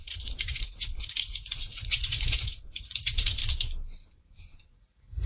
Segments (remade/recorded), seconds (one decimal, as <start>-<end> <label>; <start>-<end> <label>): 0.0-3.4 remade; 3.4-4.7 recorded; 4.7-5.3 remade